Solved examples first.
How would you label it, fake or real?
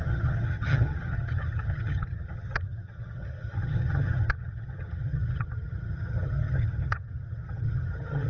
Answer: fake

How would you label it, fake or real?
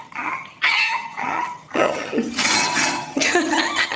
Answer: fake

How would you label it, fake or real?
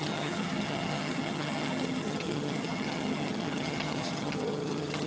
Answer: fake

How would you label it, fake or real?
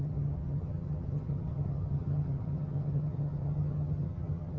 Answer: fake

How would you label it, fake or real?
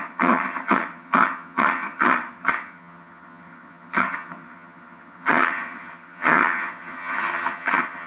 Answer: fake